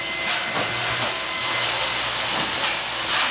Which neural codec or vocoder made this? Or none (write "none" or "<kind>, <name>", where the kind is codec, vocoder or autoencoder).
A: none